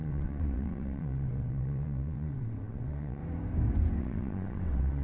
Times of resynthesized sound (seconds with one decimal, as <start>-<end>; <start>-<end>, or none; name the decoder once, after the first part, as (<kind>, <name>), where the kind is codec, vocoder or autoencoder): 0.0-3.2 (vocoder, WaveNeXt); 4.0-5.0